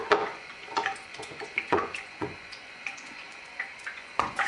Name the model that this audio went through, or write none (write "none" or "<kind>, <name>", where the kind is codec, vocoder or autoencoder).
vocoder, Vocos